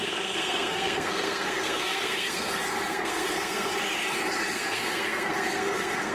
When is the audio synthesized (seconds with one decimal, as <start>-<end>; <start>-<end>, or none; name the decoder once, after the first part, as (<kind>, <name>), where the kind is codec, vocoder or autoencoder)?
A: 0.0-3.7 (codec, SNAC); 4.5-6.1